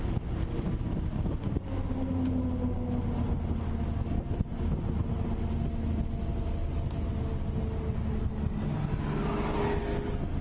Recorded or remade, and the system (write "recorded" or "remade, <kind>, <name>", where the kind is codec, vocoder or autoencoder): recorded